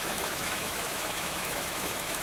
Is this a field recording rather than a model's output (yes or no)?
no